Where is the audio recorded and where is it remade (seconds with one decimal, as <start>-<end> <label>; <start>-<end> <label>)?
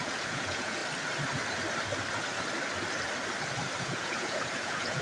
0.0-0.8 remade; 0.8-3.8 recorded; 3.8-5.0 remade